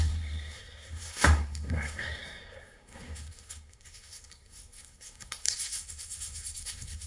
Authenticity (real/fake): fake